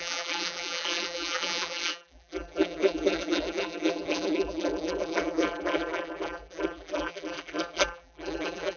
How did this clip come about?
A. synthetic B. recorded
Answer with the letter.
A